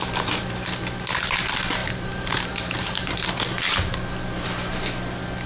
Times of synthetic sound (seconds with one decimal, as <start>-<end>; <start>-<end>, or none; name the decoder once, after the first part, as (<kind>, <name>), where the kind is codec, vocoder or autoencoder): 1.8-3.3 (vocoder, BigVGAN v2)